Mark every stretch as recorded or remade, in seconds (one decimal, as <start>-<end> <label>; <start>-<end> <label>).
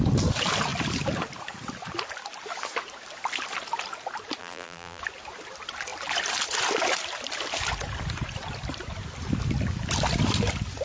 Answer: 0.0-4.4 recorded; 4.4-5.0 remade; 5.0-10.8 recorded